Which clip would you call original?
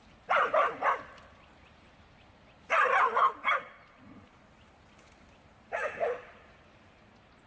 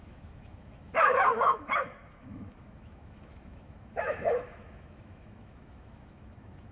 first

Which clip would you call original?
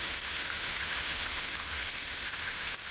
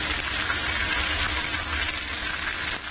second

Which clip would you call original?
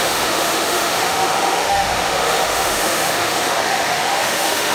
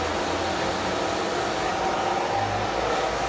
second